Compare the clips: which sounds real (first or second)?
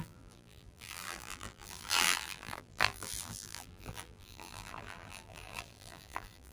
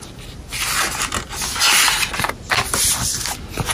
second